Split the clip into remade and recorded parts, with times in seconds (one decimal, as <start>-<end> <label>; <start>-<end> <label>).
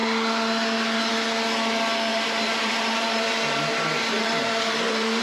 0.0-2.1 recorded; 2.1-5.2 remade